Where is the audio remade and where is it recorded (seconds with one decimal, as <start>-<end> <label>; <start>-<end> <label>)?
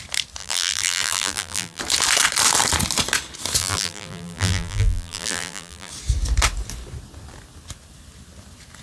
0.0-0.4 recorded; 0.4-1.8 remade; 1.8-3.6 recorded; 3.6-5.9 remade; 5.9-8.8 recorded